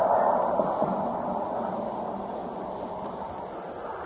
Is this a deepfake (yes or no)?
no